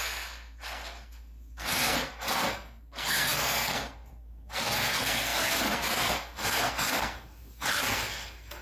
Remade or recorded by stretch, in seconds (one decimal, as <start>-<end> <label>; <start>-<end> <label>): 0.0-8.6 remade